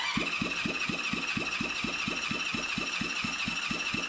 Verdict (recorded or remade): recorded